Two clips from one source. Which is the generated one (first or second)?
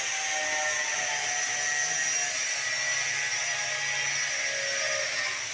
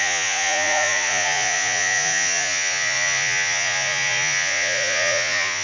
second